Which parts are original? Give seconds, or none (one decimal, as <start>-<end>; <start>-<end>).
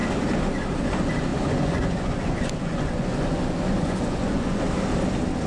0.0-1.3; 4.6-5.5